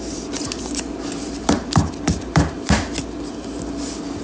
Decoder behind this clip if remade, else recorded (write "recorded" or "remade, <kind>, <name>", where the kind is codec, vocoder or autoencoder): remade, vocoder, BigVGAN v2